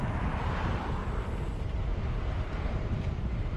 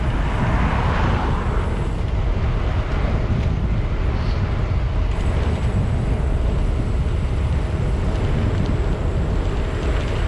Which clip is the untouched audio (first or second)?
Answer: second